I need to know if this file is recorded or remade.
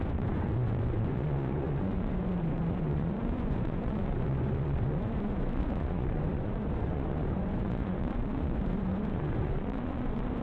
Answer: remade